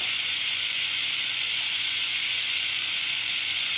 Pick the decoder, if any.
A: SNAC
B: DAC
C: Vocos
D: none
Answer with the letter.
C